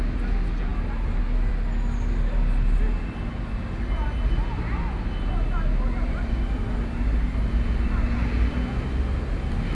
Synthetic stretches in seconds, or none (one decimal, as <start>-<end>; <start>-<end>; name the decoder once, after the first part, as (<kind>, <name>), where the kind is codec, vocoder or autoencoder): none